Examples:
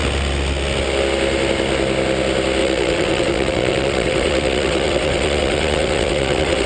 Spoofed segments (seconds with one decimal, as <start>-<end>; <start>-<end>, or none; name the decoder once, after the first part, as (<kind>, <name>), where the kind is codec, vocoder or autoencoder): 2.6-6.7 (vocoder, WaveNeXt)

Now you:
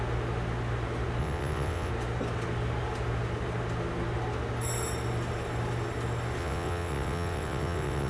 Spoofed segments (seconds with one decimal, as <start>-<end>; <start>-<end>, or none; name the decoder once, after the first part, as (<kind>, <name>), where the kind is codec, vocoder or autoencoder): 1.2-1.9 (vocoder, WaveNeXt); 6.4-8.1

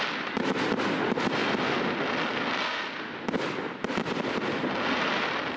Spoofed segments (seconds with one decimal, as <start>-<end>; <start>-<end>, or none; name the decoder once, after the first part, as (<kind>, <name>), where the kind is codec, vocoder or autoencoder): none